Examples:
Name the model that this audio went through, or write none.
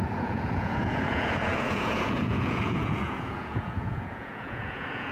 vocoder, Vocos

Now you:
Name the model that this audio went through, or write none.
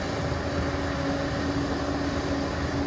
none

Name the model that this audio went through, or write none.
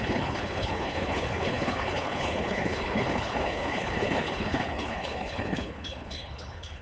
codec, HILCodec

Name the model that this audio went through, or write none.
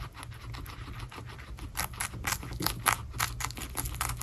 none